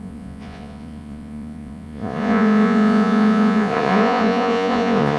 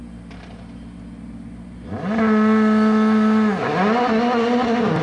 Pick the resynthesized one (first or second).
first